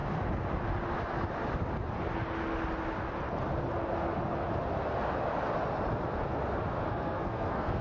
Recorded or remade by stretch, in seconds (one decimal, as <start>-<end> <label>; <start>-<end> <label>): 0.0-6.9 recorded; 6.9-7.8 remade